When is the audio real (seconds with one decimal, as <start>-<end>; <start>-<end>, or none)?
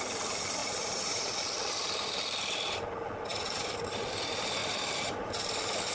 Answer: 0.0-0.6; 1.2-4.6; 5.3-5.9